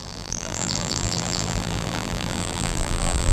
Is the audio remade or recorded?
remade